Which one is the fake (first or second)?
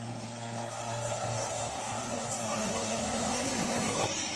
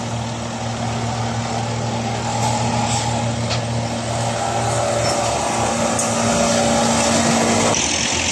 first